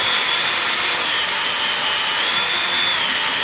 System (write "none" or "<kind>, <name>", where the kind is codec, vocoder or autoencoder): vocoder, BigVGAN v2